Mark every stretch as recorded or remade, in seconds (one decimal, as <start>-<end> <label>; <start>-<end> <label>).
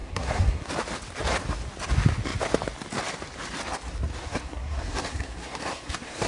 0.0-0.7 remade; 0.7-4.2 recorded; 4.2-6.3 remade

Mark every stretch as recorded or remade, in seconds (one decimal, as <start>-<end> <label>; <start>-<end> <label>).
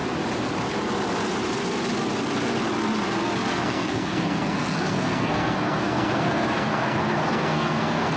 0.0-3.5 recorded; 3.5-8.2 remade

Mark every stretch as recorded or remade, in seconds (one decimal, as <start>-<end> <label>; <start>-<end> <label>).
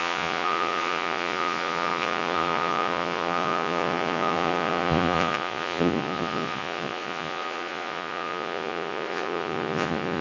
0.0-10.2 remade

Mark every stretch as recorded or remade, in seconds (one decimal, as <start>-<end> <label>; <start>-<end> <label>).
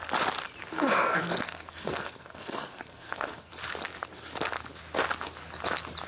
0.0-0.7 recorded; 0.7-3.5 remade; 3.5-6.1 recorded